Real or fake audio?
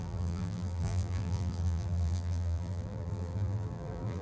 fake